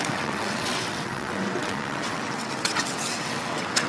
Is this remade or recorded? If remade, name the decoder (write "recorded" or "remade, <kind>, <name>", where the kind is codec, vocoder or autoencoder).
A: remade, vocoder, WaveNeXt